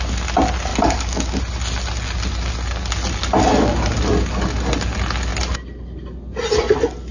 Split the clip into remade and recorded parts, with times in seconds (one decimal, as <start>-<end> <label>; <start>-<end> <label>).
0.0-0.7 recorded; 0.7-1.4 remade; 1.4-7.1 recorded